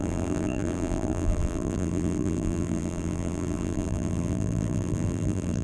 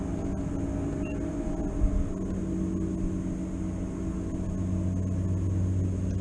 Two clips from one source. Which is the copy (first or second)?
first